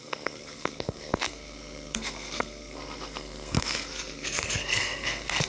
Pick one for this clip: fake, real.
fake